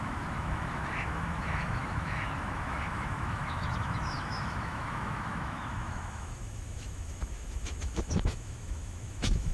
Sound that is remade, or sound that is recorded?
remade